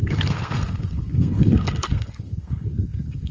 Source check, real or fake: fake